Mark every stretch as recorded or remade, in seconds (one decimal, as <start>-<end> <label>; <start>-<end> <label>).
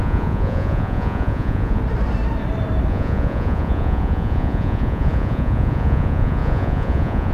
0.0-1.8 remade; 1.8-2.9 recorded; 2.9-7.3 remade